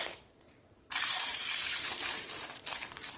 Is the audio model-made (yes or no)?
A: yes